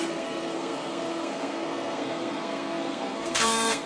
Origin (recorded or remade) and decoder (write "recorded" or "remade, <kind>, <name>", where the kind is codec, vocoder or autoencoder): remade, codec, SNAC